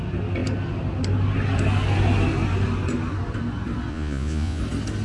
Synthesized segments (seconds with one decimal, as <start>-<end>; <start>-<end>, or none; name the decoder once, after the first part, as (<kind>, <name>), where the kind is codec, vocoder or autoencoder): 3.9-4.6 (vocoder, Vocos)